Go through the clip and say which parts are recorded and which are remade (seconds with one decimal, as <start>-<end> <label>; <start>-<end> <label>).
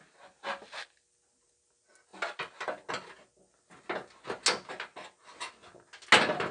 0.0-6.5 recorded